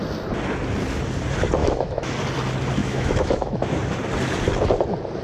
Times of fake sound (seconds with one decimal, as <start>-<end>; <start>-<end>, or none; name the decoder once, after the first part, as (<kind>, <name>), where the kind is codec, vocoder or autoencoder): 1.6-2.1 (autoencoder, DAC-VAE); 2.8-3.7